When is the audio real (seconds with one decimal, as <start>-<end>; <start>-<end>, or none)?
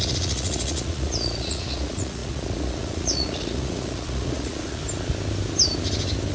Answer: 4.8-6.3